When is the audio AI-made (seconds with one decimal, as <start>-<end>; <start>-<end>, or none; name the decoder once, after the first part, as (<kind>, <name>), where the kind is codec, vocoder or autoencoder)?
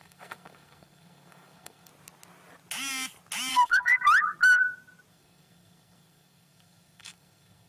0.0-1.9 (codec, SNAC); 3.5-3.9; 5.1-7.7